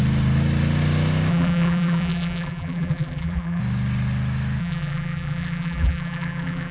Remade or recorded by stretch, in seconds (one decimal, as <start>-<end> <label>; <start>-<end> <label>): 0.0-1.3 recorded; 1.3-3.6 remade; 3.6-4.6 recorded; 4.6-6.7 remade